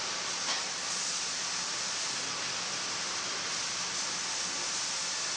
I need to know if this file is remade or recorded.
recorded